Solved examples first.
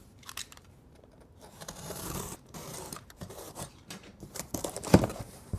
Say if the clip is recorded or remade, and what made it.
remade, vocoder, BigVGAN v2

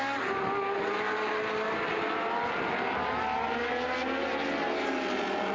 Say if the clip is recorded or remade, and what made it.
recorded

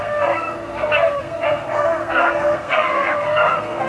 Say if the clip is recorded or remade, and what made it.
remade, codec, SNAC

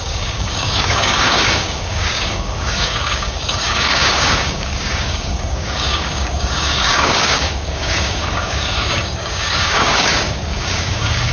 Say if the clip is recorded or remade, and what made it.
remade, codec, DAC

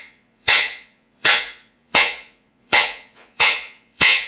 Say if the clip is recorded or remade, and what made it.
remade, vocoder, Vocos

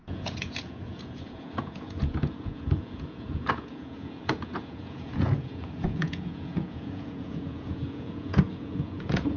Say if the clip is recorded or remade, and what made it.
remade, vocoder, Vocos